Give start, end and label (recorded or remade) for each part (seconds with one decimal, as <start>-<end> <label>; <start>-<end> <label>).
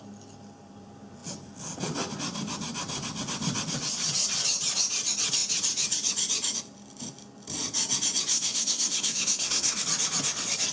0.0-8.3 recorded; 8.3-9.8 remade; 9.8-10.7 recorded